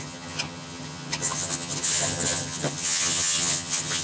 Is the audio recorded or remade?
remade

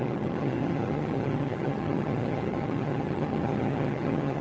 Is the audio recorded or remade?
remade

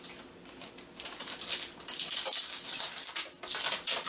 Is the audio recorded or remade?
recorded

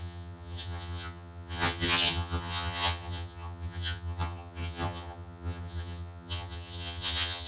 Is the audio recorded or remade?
remade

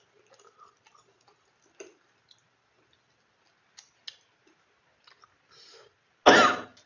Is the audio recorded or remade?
recorded